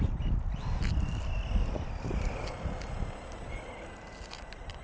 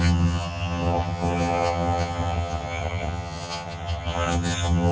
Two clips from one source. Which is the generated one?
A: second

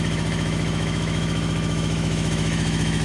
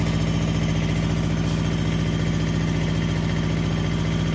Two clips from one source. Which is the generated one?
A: first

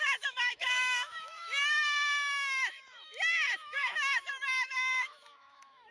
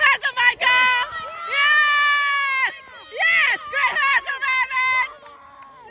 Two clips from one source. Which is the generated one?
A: first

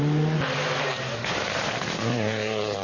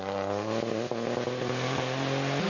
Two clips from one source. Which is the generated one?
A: first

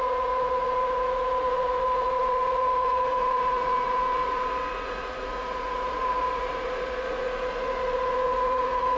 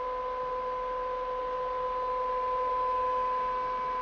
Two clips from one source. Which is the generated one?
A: first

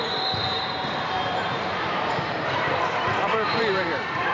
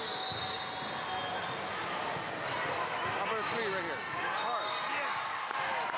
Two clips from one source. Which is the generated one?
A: first